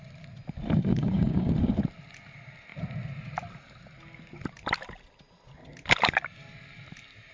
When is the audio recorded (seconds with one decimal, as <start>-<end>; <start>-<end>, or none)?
0.0-0.9; 1.5-7.3